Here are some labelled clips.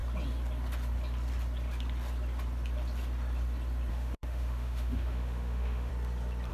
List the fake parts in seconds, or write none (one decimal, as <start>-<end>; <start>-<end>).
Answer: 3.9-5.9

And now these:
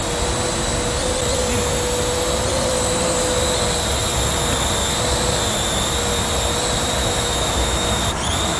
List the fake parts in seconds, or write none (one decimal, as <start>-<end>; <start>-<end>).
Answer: 7.0-8.0

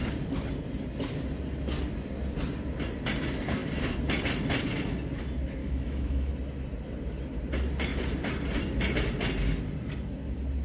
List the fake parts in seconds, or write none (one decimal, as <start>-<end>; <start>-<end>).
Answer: 5.6-6.3

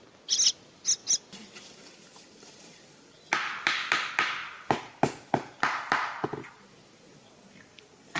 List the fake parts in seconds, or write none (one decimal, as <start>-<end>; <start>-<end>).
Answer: none